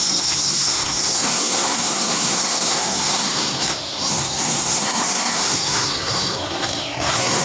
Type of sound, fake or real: fake